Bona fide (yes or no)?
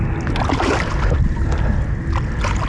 yes